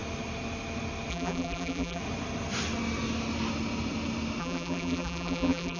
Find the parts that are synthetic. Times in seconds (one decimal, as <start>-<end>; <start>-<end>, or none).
1.1-2.0; 4.4-5.8